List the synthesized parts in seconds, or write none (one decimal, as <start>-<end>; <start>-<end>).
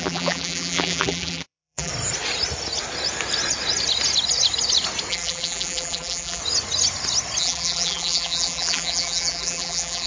0.0-1.9; 5.1-6.4; 7.4-10.1